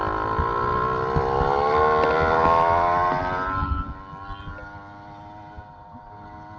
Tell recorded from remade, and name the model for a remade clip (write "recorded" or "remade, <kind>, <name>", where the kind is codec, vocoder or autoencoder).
recorded